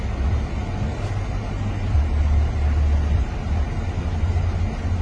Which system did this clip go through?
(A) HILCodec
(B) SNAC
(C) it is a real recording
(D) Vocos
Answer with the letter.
C